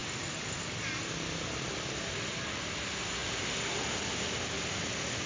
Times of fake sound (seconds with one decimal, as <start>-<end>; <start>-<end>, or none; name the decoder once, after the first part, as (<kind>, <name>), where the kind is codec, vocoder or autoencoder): none